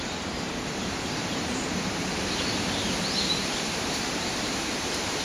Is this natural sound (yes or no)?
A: no